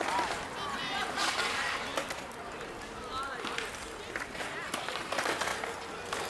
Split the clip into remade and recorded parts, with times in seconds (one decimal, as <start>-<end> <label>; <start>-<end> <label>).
0.0-1.9 remade; 1.9-3.0 recorded; 3.0-5.5 remade; 5.5-6.3 recorded